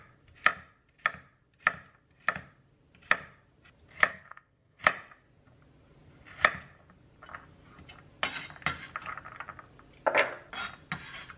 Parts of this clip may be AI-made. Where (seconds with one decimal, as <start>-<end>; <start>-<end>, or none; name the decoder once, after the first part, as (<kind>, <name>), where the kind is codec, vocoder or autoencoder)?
4.1-4.8 (codec, SNAC)